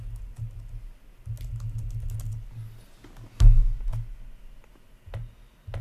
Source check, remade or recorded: recorded